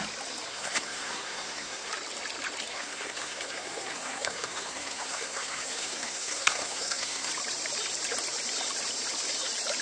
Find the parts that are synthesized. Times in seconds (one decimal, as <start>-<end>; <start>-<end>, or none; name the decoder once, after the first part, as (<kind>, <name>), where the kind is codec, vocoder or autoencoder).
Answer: 0.5-1.9 (codec, SNAC); 2.7-7.3